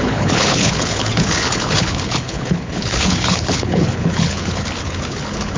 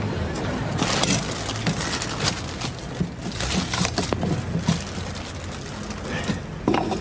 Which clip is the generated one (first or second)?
first